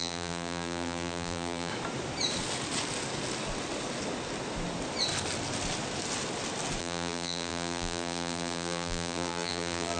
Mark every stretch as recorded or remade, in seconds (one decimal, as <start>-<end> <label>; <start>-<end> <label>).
0.0-1.7 remade; 1.7-6.8 recorded; 6.8-10.0 remade